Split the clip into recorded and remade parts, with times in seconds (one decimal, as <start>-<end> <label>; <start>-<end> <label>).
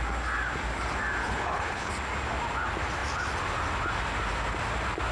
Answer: 0.0-1.2 recorded; 1.2-1.9 remade; 1.9-5.1 recorded